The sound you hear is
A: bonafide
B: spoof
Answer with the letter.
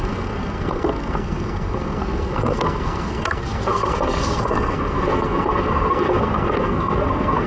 B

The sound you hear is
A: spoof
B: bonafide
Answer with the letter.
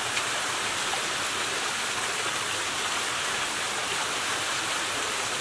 B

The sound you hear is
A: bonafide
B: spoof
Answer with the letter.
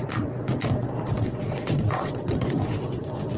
B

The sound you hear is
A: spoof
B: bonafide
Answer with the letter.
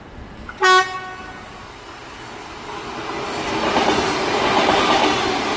B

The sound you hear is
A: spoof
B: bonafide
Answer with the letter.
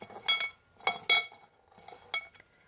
B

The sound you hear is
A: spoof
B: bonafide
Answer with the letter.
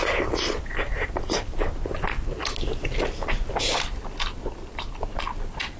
B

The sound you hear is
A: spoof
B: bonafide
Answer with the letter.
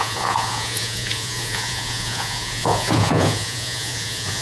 A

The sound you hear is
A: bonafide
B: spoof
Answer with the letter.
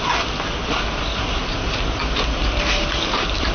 A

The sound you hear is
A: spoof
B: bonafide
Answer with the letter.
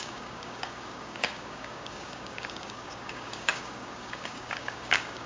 A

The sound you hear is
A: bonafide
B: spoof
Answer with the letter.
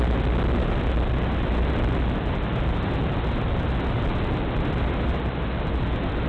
A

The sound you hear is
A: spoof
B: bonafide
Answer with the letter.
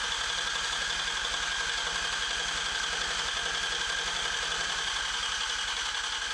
B